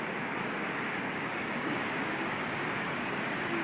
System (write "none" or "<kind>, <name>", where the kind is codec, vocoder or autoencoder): codec, DAC